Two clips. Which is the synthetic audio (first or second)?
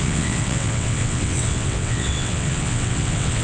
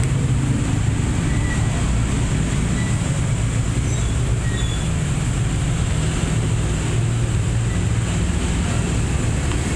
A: first